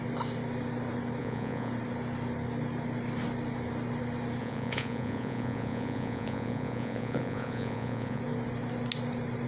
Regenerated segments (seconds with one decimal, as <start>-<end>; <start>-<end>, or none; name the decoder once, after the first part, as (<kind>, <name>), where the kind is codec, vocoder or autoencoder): 1.2-1.7 (vocoder, Vocos); 4.4-8.2